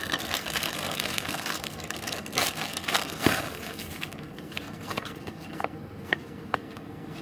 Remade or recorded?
remade